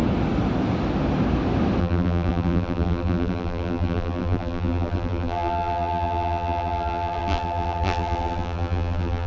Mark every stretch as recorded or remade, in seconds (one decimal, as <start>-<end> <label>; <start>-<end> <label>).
0.0-1.8 recorded; 1.8-9.3 remade